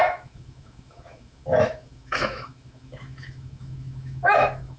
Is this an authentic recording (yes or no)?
no